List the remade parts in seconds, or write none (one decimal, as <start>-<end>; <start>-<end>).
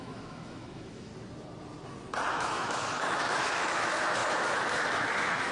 0.0-1.1; 2.3-5.5